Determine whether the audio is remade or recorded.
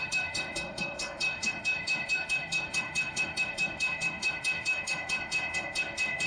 remade